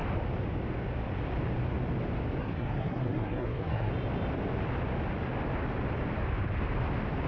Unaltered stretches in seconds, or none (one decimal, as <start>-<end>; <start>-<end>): 0.0-2.4; 3.9-7.3